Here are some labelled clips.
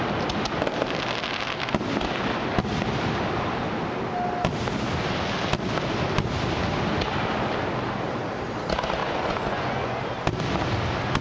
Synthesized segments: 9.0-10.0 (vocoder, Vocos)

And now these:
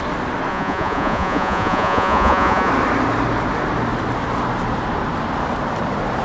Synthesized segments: 0.5-2.7 (vocoder, Vocos)

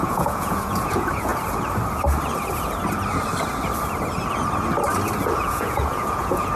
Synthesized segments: 0.0-1.3 (vocoder, Vocos); 5.3-6.6